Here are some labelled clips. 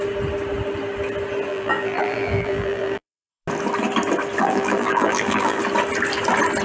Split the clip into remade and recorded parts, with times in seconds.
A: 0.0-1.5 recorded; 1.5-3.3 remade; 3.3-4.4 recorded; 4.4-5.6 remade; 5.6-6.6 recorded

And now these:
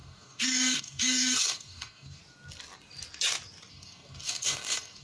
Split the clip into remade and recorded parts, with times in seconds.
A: 0.0-2.2 remade; 2.2-3.7 recorded; 3.7-5.0 remade

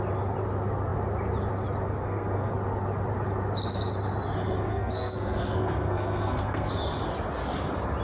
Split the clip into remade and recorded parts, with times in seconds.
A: 0.0-2.0 recorded; 2.0-2.5 remade; 2.5-4.7 recorded; 4.7-6.7 remade; 6.7-8.0 recorded

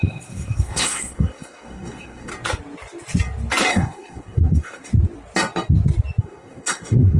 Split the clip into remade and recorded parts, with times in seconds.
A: 0.0-2.3 remade; 2.3-3.7 recorded; 3.7-4.9 remade; 4.9-6.2 recorded; 6.2-7.2 remade